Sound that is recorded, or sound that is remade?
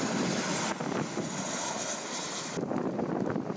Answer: recorded